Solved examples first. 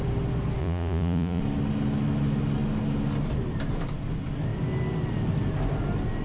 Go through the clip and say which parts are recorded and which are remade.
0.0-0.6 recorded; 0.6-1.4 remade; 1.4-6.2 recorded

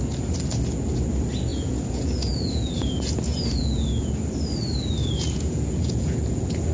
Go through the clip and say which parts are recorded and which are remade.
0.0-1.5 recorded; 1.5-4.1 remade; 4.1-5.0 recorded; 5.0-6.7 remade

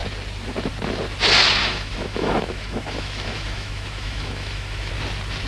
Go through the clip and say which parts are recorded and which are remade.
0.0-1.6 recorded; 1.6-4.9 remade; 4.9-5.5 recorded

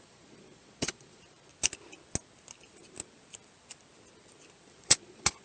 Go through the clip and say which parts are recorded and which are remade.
0.0-1.5 remade; 1.5-4.7 recorded; 4.7-5.4 remade